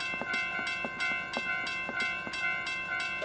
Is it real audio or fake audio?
real